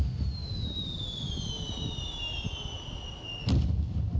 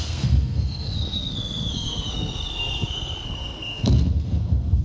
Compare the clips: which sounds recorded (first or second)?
first